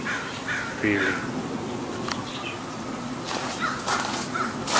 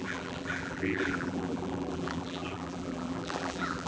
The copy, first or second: second